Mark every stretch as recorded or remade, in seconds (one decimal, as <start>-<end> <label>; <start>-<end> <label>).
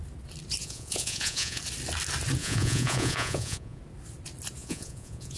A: 0.0-0.6 recorded; 0.6-1.6 remade; 1.6-2.4 recorded; 2.4-3.8 remade; 3.8-4.6 recorded; 4.6-5.4 remade